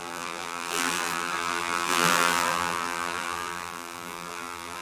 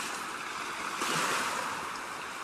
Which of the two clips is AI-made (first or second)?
first